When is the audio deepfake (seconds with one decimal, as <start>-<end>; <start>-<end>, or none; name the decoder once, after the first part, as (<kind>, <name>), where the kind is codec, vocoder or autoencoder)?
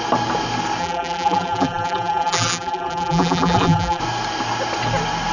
0.8-4.0 (vocoder, BigVGAN v2)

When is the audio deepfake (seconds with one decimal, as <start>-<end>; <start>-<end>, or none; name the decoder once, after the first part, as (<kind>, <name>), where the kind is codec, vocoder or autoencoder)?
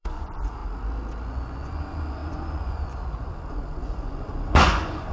0.0-0.6 (vocoder, Vocos); 1.3-5.1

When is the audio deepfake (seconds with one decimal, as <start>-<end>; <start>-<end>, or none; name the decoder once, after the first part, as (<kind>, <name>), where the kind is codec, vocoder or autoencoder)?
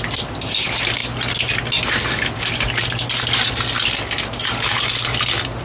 none